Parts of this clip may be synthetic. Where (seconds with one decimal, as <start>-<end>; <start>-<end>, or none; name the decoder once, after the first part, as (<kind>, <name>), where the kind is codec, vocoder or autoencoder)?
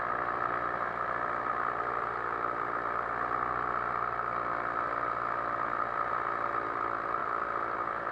none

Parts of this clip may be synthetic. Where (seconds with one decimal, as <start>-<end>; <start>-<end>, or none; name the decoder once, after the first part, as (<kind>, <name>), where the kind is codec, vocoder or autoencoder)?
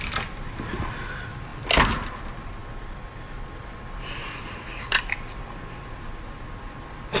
none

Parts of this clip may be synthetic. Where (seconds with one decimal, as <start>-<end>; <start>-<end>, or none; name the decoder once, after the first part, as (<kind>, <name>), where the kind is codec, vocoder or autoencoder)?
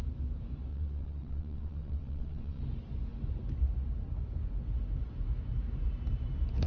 0.7-2.6 (vocoder, WaveNeXt)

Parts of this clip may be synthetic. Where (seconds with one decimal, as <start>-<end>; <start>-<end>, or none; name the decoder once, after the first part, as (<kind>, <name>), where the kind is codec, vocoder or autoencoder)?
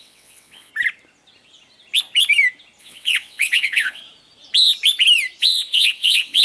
0.0-0.7 (vocoder, WaveNeXt); 2.8-4.0; 5.4-6.4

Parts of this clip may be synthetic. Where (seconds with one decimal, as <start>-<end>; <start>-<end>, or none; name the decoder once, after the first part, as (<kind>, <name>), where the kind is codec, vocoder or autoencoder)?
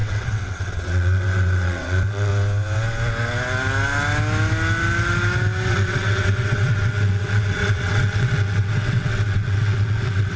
0.0-2.3 (vocoder, WaveNeXt); 5.7-10.4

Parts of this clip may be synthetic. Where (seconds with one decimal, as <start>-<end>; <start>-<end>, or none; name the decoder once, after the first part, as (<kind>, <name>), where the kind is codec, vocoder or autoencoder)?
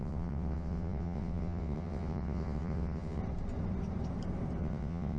0.0-3.2 (vocoder, WaveNeXt); 4.6-5.2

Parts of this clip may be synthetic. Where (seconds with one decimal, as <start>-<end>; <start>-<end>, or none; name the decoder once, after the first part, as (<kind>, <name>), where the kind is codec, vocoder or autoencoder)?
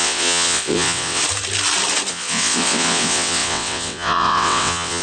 0.0-1.2 (vocoder, WaveNeXt); 2.1-5.0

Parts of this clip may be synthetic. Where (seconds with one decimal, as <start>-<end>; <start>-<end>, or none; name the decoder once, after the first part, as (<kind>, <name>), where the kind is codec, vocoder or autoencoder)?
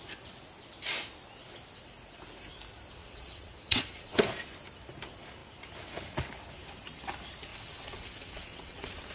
3.0-4.2 (vocoder, WaveNeXt); 7.5-9.1